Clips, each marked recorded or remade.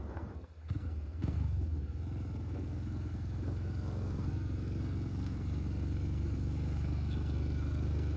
remade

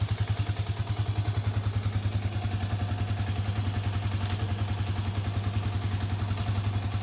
recorded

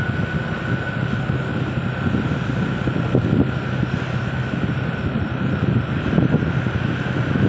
recorded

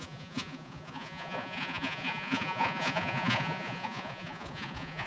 remade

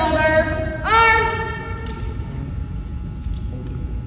recorded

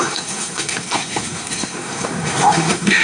remade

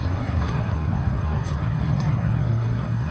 remade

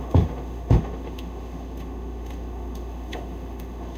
remade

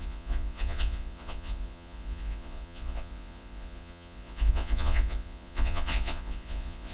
remade